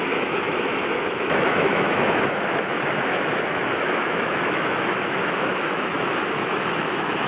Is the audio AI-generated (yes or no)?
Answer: yes